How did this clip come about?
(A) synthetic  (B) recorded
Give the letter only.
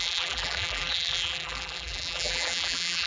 A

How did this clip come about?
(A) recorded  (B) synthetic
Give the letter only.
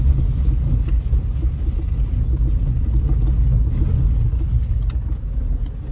A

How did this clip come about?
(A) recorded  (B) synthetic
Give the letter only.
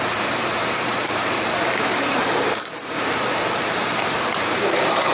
B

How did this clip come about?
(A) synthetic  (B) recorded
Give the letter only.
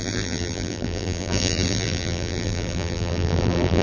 A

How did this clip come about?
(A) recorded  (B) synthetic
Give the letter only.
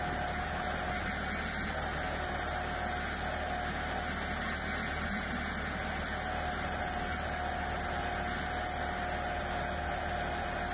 A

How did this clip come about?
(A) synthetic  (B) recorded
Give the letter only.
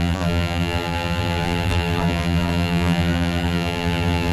A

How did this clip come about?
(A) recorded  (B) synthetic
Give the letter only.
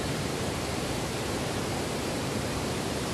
B